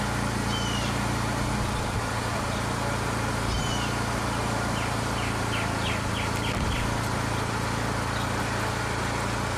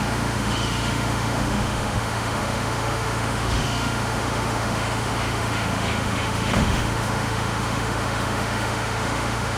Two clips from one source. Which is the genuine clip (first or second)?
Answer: first